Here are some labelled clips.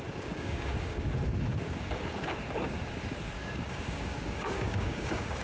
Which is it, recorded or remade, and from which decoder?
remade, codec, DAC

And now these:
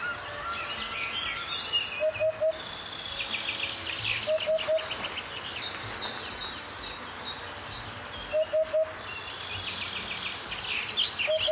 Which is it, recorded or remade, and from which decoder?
recorded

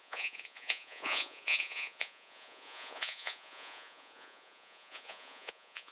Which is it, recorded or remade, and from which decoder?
remade, vocoder, Vocos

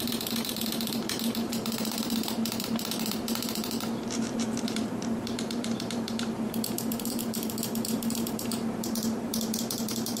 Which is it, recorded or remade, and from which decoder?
remade, vocoder, BigVGAN v2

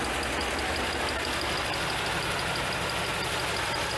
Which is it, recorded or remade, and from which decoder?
recorded